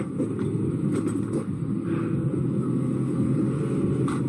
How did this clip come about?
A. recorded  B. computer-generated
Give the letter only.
A